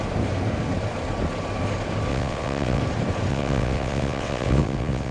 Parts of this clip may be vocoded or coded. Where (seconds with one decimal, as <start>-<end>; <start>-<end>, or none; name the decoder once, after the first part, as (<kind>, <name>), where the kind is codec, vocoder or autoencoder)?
2.1-2.8 (vocoder, WaveNeXt); 3.3-5.1